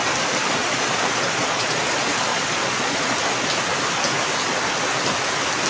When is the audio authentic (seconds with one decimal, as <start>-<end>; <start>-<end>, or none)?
0.0-0.6; 1.8-2.3; 3.1-5.7